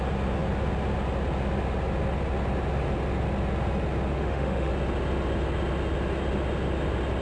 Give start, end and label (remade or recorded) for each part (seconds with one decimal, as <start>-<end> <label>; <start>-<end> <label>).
0.0-4.1 recorded; 4.1-4.7 remade; 4.7-7.2 recorded